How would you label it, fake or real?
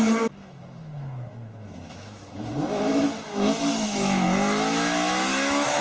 fake